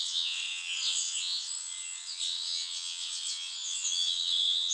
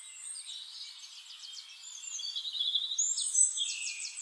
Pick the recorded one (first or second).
second